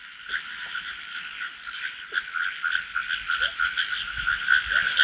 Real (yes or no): yes